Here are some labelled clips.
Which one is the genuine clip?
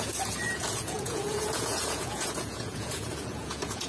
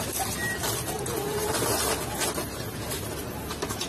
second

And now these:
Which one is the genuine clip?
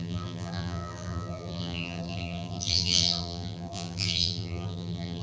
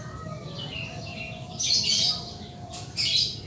second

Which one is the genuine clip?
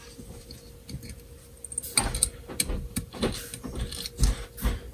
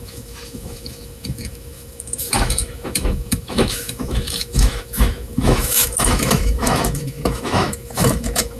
first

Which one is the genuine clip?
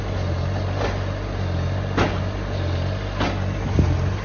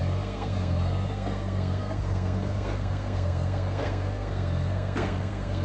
first